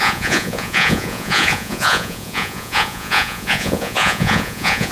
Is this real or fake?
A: fake